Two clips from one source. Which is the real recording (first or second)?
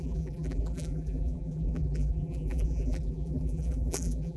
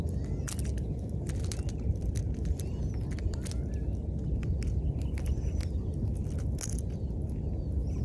second